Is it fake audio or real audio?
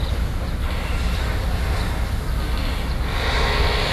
real